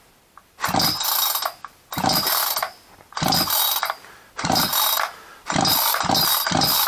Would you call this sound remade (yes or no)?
yes